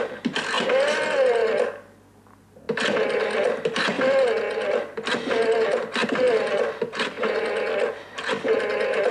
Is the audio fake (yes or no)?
no